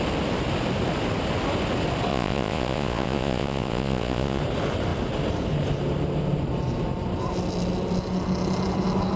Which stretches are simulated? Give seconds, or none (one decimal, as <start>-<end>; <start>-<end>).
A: 2.1-4.4